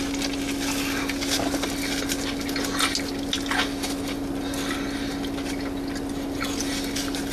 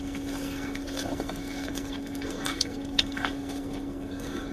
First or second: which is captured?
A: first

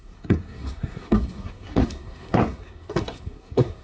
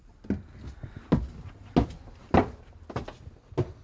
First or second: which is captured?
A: second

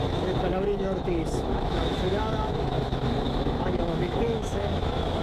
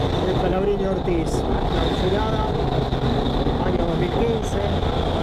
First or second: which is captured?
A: second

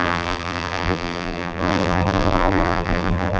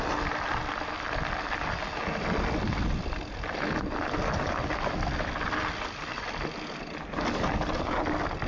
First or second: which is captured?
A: second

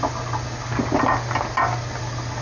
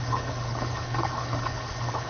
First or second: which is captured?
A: first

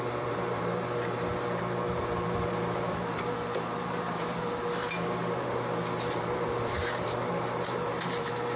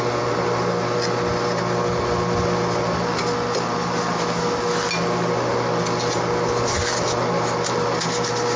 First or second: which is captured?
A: second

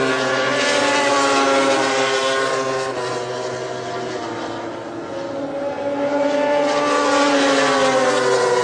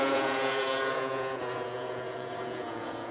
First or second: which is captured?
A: first